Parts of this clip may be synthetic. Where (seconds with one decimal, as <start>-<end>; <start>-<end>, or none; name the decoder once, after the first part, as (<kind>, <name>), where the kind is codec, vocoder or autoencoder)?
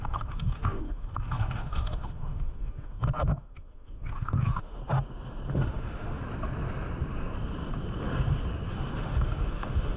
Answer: 0.0-4.8 (autoencoder, DAC-VAE); 5.5-6.2; 8.7-10.0